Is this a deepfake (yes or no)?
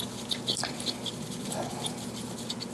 no